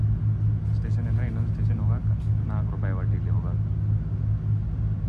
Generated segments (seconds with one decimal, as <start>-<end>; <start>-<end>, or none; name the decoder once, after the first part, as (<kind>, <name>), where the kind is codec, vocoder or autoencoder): none